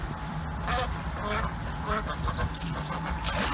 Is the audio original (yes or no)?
yes